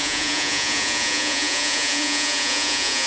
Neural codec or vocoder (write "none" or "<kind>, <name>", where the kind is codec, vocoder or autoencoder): vocoder, Vocos